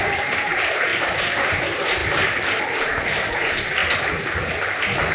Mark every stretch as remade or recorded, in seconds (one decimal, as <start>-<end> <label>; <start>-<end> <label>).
0.0-3.8 remade; 3.8-5.1 recorded